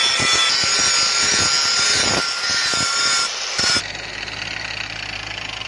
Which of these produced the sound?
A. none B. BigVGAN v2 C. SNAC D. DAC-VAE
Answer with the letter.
A